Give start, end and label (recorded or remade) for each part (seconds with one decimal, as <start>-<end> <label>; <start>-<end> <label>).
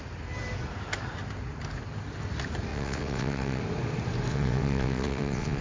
0.0-2.7 recorded; 2.7-3.6 remade; 3.6-4.3 recorded; 4.3-5.6 remade